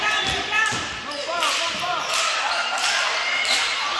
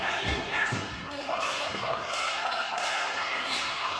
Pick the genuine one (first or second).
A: first